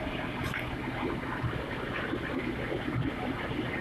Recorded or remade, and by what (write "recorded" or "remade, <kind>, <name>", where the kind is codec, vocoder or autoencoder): recorded